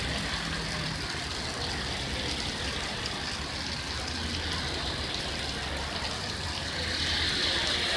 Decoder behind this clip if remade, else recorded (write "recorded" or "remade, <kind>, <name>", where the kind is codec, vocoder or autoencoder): recorded